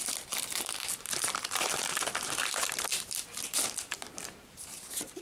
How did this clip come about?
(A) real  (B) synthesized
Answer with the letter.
B